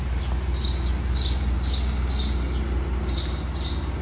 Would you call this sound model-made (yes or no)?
no